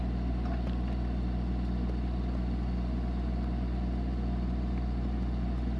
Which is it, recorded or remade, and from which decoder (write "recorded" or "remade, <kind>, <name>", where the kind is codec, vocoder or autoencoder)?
recorded